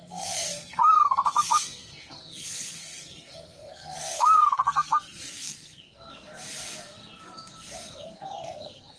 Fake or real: fake